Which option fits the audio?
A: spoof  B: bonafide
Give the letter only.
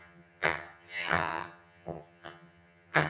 A